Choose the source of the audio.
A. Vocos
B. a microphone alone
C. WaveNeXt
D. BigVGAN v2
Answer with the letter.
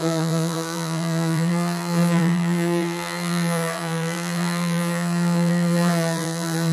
D